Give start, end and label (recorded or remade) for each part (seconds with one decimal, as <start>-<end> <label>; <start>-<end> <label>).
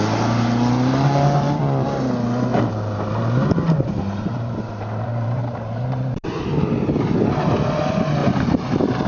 0.0-2.5 recorded; 2.5-6.9 remade; 6.9-8.2 recorded; 8.2-8.7 remade; 8.7-9.1 recorded